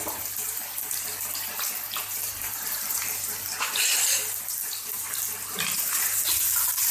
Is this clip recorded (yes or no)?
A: yes